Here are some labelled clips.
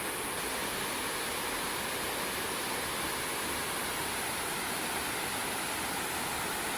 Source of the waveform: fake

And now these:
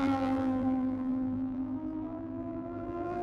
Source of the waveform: fake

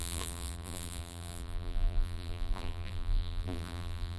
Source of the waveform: fake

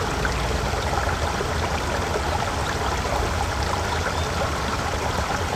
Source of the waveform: real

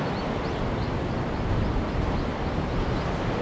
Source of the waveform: real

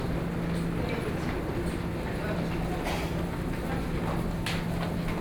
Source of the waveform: real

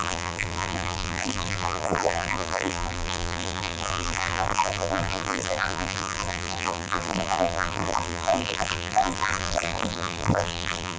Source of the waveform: fake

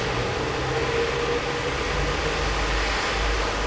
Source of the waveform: real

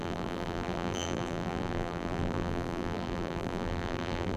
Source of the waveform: fake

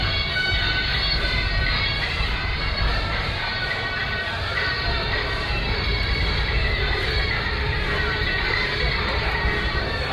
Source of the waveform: fake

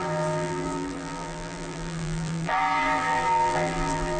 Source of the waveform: fake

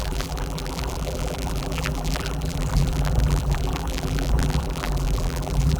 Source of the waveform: fake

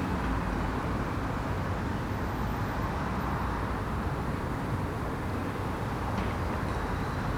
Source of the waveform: real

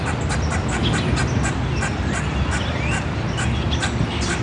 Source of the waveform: real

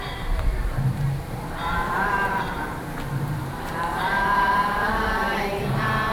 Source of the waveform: fake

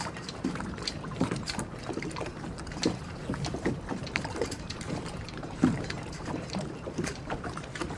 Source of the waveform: fake